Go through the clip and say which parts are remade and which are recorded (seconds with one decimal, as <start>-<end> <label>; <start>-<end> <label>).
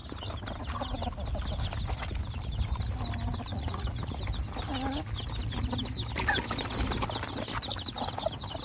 0.0-3.5 recorded; 3.5-4.2 remade; 4.2-8.6 recorded